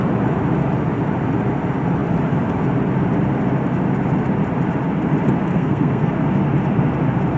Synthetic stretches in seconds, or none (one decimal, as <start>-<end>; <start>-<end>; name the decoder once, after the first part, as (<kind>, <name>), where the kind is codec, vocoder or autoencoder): 5.5-6.1 (codec, SNAC)